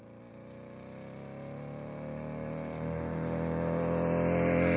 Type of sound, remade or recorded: recorded